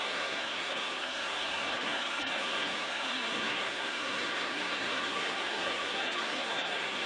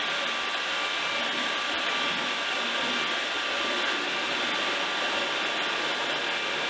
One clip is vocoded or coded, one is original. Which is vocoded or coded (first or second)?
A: first